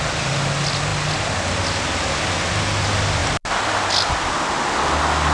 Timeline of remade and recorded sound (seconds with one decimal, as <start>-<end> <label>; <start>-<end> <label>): 0.0-5.3 recorded